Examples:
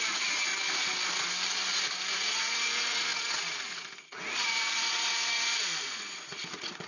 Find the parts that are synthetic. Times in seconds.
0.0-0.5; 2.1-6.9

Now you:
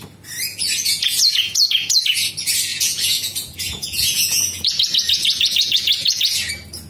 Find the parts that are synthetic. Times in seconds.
0.5-2.3; 2.7-6.5

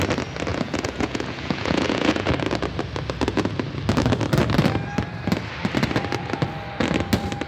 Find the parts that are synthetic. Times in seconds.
0.5-2.3